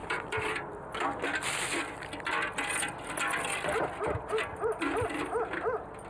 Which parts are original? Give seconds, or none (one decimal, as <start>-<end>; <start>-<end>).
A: 1.0-6.1